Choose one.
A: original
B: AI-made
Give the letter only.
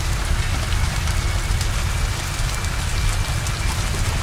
A